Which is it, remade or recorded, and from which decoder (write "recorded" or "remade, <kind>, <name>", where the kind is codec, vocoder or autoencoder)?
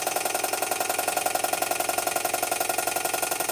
recorded